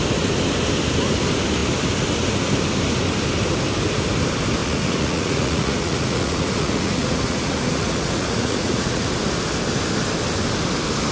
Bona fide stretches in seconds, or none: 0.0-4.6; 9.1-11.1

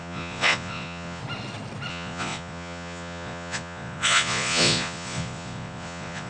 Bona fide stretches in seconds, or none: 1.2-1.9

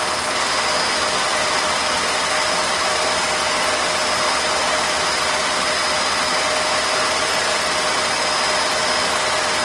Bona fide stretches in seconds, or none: 0.0-9.6

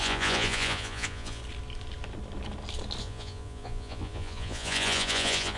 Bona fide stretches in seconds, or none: 1.4-3.0

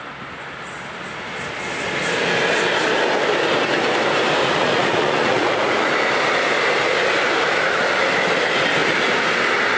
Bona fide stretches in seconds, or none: 0.0-4.4; 5.8-9.8

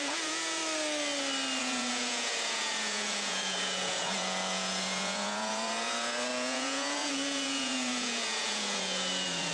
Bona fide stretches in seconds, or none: 0.6-1.6

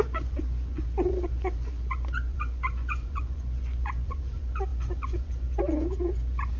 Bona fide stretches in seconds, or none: none

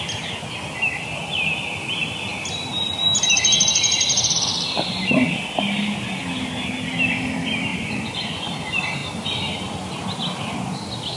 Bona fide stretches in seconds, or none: 0.0-7.7; 8.5-11.2